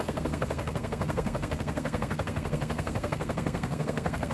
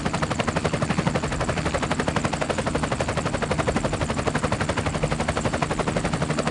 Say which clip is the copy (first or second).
first